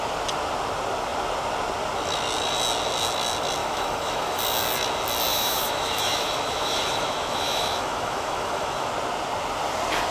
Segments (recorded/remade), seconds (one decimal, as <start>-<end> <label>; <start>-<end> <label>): 0.0-3.6 recorded; 3.6-4.4 remade; 4.4-5.3 recorded; 5.3-8.9 remade; 8.9-10.1 recorded